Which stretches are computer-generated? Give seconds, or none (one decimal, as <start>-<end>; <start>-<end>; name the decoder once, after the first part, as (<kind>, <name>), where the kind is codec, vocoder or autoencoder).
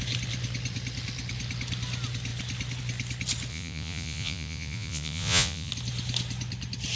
3.5-5.7 (vocoder, Vocos)